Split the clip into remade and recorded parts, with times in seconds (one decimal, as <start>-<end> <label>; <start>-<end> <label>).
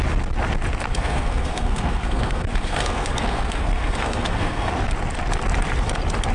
0.0-0.9 recorded; 0.9-4.7 remade; 4.7-6.3 recorded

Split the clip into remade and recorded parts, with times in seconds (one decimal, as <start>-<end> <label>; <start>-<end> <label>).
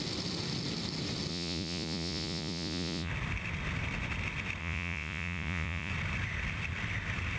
0.0-1.3 recorded; 1.3-3.1 remade; 3.1-4.6 recorded; 4.6-5.9 remade; 5.9-7.4 recorded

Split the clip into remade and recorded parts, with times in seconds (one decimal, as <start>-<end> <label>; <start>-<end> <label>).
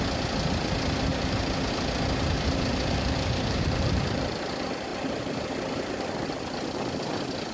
0.0-1.1 recorded; 1.1-1.7 remade; 1.7-2.7 recorded; 2.7-4.5 remade; 4.5-4.9 recorded; 4.9-5.5 remade; 5.5-7.5 recorded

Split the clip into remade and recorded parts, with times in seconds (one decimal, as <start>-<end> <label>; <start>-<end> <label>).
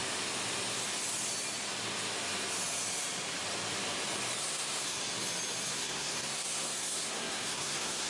0.0-4.4 recorded; 4.4-5.0 remade; 5.0-5.7 recorded; 5.7-8.1 remade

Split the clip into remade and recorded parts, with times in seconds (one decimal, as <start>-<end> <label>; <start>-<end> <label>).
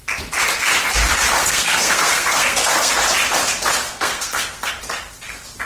0.0-1.4 recorded; 1.4-2.9 remade; 2.9-3.8 recorded; 3.8-4.7 remade; 4.7-5.7 recorded